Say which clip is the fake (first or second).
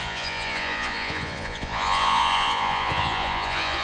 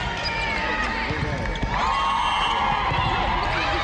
first